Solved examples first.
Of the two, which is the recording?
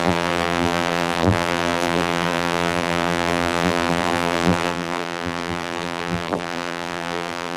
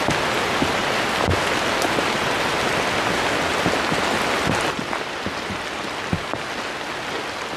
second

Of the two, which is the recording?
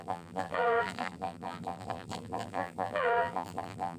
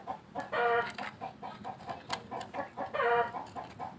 second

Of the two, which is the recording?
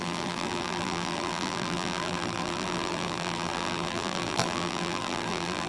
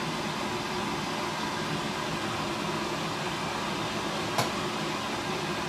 second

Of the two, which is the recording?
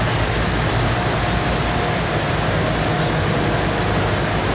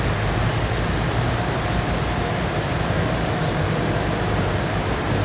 first